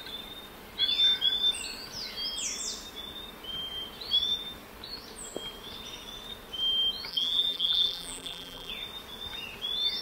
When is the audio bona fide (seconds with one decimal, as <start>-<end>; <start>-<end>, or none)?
0.0-7.1; 8.7-10.0